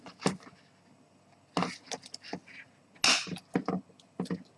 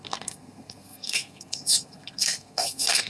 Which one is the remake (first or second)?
second